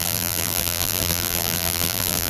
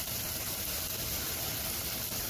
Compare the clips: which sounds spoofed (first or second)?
first